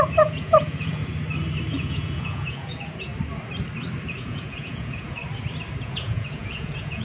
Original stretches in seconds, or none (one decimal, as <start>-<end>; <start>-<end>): 1.0-1.7; 3.1-4.1; 5.2-5.8